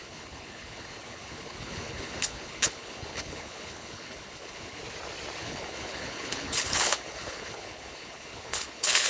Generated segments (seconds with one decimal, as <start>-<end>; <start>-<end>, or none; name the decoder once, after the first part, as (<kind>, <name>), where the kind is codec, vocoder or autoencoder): 0.0-4.8 (codec, HILCodec); 5.4-9.1